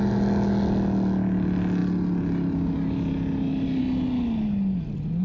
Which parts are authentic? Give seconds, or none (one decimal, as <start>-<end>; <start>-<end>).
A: 0.0-5.2